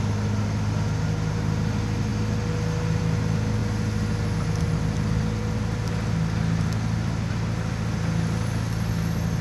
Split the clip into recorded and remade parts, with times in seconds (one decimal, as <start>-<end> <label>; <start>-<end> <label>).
0.0-9.4 recorded